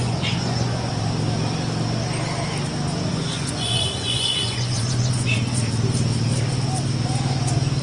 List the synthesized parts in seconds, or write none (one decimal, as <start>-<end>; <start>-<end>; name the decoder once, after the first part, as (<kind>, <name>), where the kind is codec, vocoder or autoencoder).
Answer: 0.0-0.9 (vocoder, Vocos); 3.1-5.6